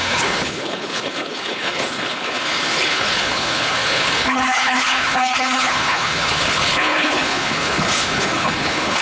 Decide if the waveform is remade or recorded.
remade